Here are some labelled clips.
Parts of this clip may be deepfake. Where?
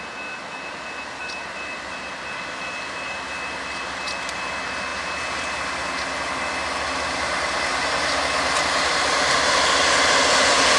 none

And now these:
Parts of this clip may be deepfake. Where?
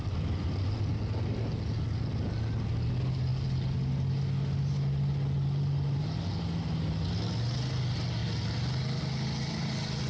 none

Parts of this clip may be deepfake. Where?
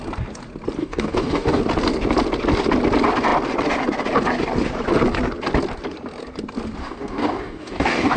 0.8-1.6 (codec, DAC); 6.8-8.2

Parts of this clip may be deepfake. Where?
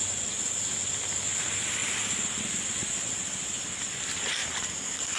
4.4-5.2 (vocoder, BigVGAN v2)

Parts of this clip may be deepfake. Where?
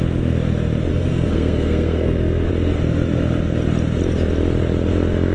0.9-2.5 (codec, SNAC)